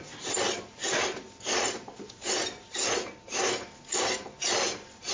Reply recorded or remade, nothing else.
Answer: recorded